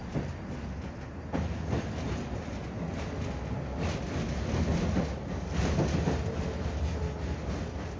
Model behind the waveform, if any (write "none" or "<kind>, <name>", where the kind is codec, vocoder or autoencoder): none